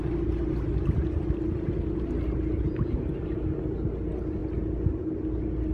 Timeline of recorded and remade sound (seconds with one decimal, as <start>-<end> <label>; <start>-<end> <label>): 0.0-5.7 recorded